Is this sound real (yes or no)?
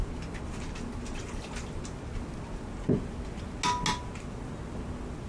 yes